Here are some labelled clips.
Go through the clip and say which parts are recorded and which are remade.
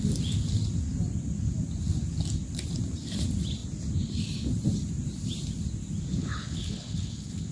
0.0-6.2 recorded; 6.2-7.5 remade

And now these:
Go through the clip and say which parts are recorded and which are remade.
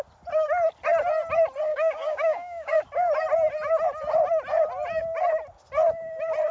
0.0-1.7 recorded; 1.7-2.8 remade; 2.8-6.5 recorded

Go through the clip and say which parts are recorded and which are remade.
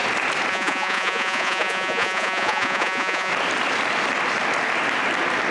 0.0-0.5 recorded; 0.5-3.3 remade; 3.3-5.5 recorded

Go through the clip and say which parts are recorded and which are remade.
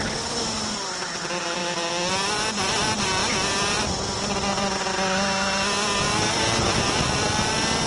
0.0-7.9 recorded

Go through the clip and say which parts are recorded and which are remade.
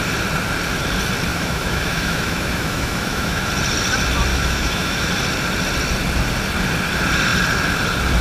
0.0-1.3 recorded; 1.3-3.5 remade; 3.5-4.3 recorded; 4.3-5.1 remade; 5.1-8.2 recorded